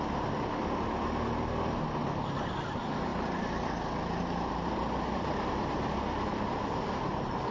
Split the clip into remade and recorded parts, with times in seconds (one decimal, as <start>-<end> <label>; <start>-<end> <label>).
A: 0.0-7.5 recorded